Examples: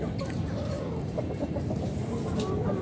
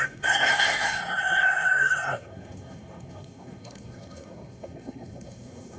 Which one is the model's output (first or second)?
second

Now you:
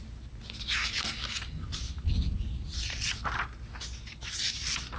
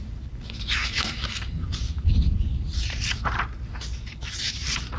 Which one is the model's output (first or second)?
second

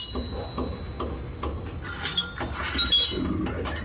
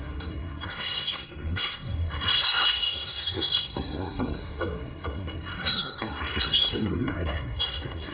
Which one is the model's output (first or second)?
second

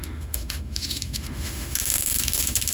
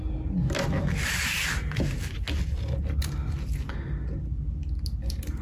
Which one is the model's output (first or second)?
first